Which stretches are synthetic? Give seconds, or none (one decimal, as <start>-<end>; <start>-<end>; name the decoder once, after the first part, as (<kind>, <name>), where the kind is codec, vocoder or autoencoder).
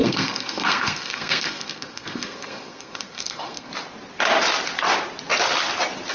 0.0-3.7 (codec, SNAC)